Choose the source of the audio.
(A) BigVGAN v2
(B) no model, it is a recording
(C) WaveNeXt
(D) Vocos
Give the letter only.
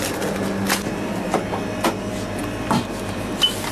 B